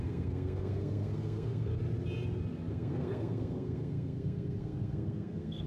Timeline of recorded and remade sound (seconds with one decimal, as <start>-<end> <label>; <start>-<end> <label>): 0.0-1.8 remade; 1.8-2.7 recorded; 2.7-5.7 remade